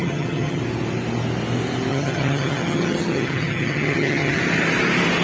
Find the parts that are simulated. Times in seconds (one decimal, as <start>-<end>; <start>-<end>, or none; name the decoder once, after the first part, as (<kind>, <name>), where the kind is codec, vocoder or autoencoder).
0.0-0.6 (vocoder, HiFi-GAN); 1.9-4.4